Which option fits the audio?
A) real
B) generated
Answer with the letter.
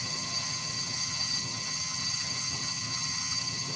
B